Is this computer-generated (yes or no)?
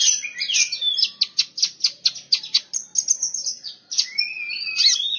no